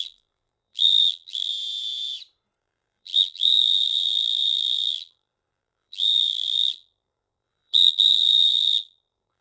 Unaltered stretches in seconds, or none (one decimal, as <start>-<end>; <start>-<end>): 1.5-2.6